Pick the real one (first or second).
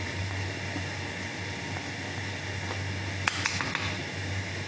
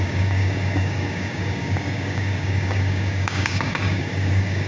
first